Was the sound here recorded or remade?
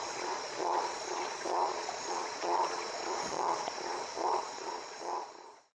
remade